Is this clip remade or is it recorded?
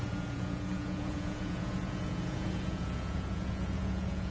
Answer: remade